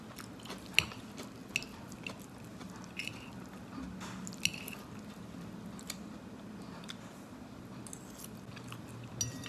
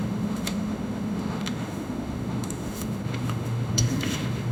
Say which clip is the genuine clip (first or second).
first